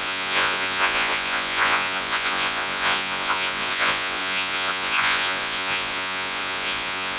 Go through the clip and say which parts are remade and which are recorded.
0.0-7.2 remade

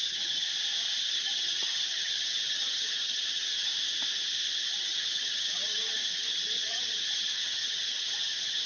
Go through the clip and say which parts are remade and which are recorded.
0.0-0.5 remade; 0.5-1.1 recorded; 1.1-3.7 remade; 3.7-4.8 recorded; 4.8-8.7 remade